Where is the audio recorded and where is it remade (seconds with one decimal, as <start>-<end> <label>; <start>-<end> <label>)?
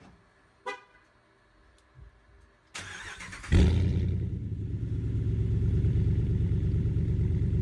0.0-3.9 recorded; 3.9-7.6 remade